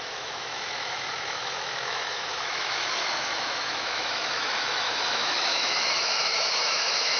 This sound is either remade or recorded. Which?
remade